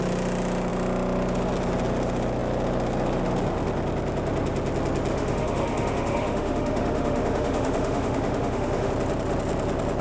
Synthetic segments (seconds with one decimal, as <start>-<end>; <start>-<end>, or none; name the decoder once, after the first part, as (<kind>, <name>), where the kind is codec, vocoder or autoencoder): 5.1-8.9 (autoencoder, DAC-VAE)